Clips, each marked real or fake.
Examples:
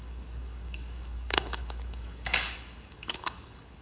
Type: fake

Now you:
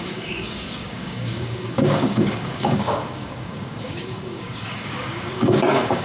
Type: fake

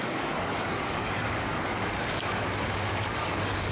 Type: fake